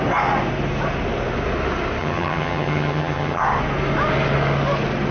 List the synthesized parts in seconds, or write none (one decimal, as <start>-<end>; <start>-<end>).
2.0-3.4